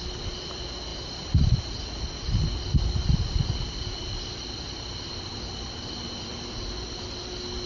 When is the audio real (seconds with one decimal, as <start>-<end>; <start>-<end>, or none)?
0.0-7.7